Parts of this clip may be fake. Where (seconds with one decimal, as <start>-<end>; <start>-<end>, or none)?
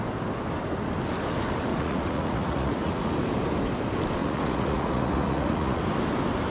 1.7-3.1; 4.2-5.8